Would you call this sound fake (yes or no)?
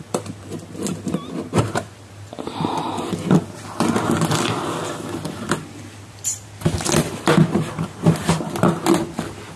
no